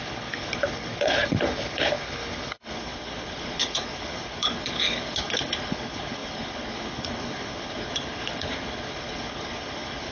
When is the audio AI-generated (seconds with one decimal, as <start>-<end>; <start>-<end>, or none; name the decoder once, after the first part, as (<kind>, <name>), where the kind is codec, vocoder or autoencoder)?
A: 0.0-10.1 (codec, HILCodec)